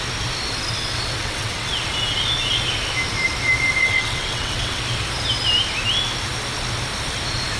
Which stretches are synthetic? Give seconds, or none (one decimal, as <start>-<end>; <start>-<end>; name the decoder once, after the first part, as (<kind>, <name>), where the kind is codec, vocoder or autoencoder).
1.2-1.7 (vocoder, WaveNeXt); 3.8-4.8

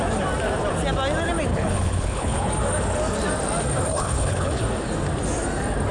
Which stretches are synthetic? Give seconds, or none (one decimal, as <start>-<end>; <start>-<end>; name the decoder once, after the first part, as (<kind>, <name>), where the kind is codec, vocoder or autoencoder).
1.5-2.5 (codec, HILCodec); 3.9-4.6

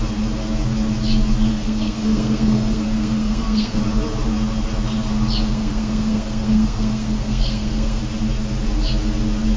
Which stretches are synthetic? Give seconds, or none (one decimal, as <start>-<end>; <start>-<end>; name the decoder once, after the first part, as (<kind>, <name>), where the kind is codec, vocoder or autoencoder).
1.5-3.8 (codec, SNAC); 5.5-8.0

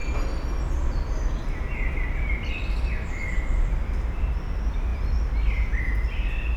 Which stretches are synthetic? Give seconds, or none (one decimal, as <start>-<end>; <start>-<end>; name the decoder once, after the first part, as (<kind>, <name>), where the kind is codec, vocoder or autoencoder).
none

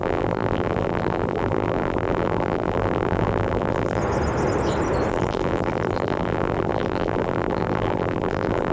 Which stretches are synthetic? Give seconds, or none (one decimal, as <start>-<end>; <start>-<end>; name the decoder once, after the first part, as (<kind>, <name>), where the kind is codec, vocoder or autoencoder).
0.0-4.0 (vocoder, BigVGAN v2); 5.1-8.7

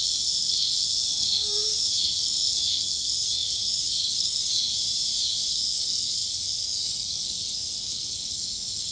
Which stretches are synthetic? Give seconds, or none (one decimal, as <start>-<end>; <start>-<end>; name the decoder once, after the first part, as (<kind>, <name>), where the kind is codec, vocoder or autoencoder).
0.0-4.7 (codec, SNAC); 5.5-8.9

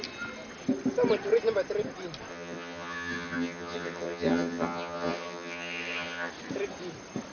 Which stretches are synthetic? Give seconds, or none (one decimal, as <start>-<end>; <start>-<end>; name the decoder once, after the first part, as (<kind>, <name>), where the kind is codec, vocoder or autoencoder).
2.3-6.3 (vocoder, HiFi-GAN)